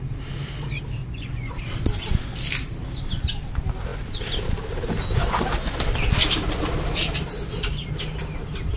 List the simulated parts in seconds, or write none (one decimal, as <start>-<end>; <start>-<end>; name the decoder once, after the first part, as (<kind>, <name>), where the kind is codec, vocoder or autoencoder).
1.0-1.5 (vocoder, Vocos)

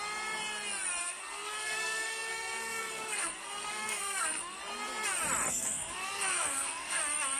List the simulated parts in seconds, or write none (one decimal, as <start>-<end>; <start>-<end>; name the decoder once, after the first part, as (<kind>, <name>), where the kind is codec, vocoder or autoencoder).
1.0-4.6 (codec, SNAC); 5.5-7.0

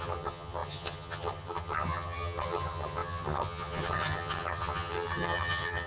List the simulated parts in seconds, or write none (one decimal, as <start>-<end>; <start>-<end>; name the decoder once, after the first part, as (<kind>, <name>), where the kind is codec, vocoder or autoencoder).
0.0-5.9 (vocoder, HiFi-GAN)

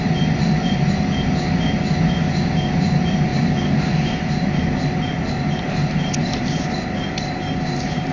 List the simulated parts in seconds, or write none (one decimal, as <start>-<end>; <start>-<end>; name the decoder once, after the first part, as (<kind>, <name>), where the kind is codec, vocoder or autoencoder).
3.3-7.4 (vocoder, BigVGAN v2)

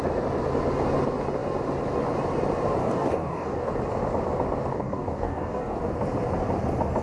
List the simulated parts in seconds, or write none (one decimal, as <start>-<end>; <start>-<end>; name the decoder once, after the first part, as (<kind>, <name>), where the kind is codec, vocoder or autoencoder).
2.8-3.7 (codec, DAC); 4.7-5.8

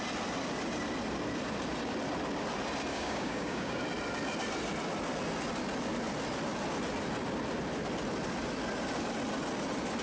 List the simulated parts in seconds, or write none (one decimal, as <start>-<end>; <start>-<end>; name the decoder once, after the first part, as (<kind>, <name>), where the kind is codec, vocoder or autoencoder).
2.9-3.8 (codec, DAC)